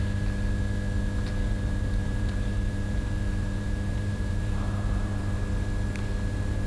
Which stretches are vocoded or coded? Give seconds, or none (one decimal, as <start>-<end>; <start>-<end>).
1.2-5.2